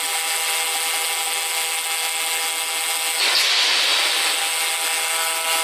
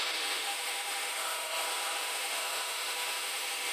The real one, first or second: first